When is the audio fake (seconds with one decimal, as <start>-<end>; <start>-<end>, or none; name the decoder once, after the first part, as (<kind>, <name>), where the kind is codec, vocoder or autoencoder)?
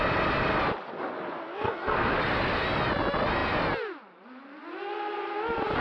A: 1.5-2.1 (codec, SNAC)